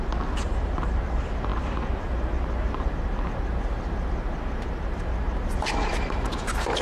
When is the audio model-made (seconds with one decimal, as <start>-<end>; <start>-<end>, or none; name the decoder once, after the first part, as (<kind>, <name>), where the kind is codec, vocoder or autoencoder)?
none